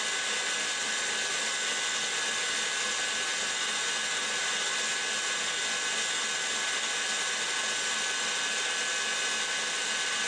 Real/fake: real